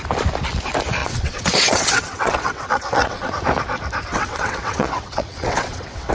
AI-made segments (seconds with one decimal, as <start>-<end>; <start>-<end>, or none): 1.0-3.3; 4.1-6.1